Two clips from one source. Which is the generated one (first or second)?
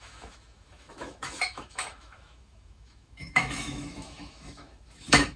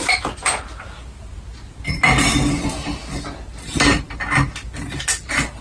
first